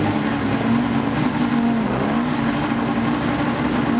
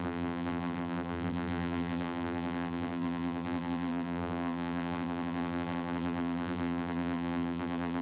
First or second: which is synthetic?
second